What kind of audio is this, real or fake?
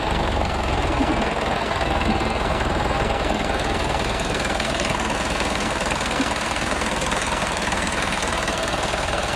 fake